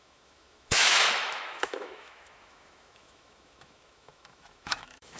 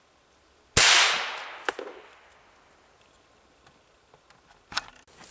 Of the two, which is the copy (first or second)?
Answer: first